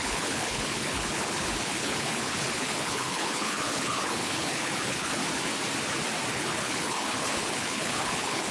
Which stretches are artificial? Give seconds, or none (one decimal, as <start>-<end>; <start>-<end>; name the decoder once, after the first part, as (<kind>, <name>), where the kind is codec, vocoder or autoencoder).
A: 0.0-5.2 (codec, HILCodec); 6.3-8.5

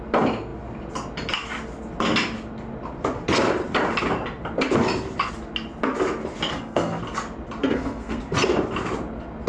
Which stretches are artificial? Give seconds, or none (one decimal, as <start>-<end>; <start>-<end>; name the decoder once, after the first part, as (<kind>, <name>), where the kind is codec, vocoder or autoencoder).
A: 6.5-7.0 (codec, SNAC); 7.6-8.2

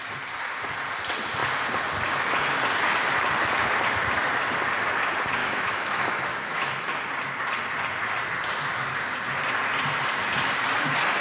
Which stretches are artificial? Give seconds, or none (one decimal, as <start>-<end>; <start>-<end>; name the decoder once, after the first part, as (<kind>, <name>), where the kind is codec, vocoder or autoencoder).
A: 5.4-6.9 (autoencoder, DAC-VAE)

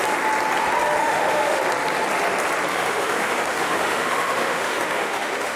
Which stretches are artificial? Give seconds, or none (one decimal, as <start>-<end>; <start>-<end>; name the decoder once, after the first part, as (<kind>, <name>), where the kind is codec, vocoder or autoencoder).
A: 1.0-1.6 (autoencoder, DAC-VAE); 2.7-5.6

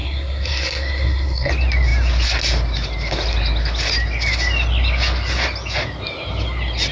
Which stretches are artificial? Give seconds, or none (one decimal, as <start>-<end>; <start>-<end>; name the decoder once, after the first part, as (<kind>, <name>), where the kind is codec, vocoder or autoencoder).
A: 0.0-1.5 (codec, SNAC)